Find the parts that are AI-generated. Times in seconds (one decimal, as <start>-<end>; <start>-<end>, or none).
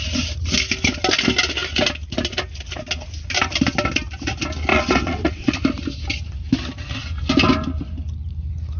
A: 4.7-5.5